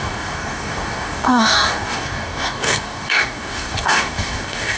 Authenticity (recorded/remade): remade